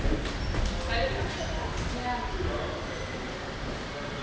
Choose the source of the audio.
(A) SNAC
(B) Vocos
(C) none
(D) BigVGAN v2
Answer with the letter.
C